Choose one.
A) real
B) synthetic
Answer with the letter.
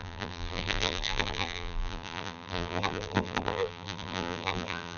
B